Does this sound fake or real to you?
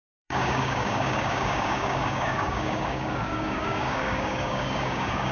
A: fake